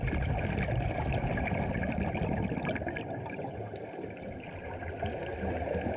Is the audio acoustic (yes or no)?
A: yes